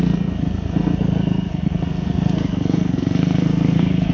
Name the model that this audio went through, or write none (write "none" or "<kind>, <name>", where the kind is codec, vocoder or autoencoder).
codec, SNAC